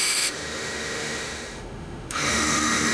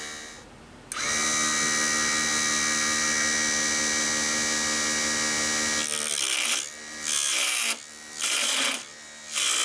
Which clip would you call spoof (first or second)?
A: first